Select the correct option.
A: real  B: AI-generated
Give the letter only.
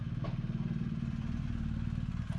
A